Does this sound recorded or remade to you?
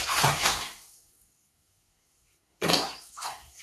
remade